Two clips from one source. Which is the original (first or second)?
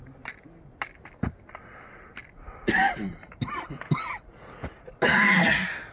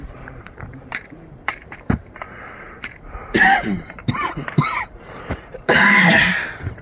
first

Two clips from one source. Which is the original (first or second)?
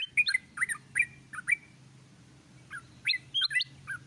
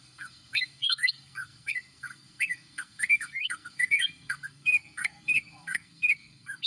first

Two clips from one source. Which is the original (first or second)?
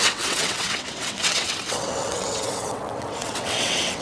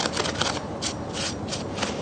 second